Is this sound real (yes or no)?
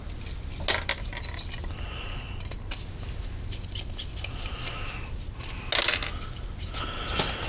yes